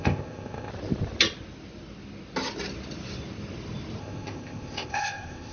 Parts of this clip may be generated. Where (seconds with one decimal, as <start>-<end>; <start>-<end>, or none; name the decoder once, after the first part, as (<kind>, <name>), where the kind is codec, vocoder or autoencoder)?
0.0-0.7 (codec, ZipCodec); 4.0-5.5